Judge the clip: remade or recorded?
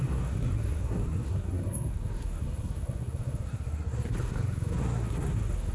remade